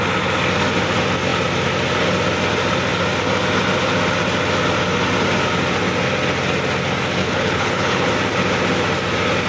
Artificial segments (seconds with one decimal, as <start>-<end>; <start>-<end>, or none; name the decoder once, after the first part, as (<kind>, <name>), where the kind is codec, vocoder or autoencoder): 7.2-8.1 (codec, HILCodec)